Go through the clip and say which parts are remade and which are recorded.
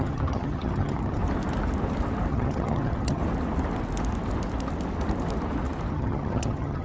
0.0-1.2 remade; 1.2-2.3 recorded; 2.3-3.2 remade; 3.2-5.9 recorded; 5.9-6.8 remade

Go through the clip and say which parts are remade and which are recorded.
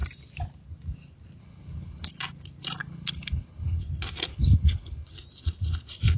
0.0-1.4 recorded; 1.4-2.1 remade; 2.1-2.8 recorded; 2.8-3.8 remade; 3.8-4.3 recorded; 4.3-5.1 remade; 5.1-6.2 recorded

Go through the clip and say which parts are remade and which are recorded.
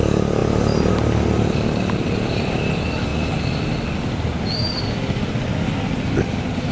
0.0-6.7 recorded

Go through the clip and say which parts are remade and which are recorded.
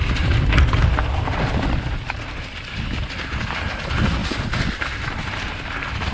0.0-4.2 recorded; 4.2-5.5 remade; 5.5-6.1 recorded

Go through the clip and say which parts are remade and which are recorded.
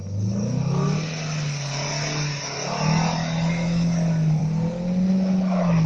0.0-3.5 recorded; 3.5-4.4 remade; 4.4-5.1 recorded; 5.1-5.9 remade